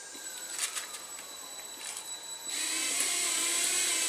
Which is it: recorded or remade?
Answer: recorded